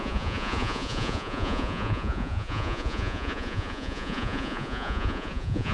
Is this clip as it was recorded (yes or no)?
no